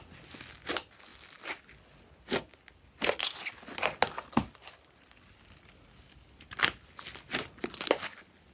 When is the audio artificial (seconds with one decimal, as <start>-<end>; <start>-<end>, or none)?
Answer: none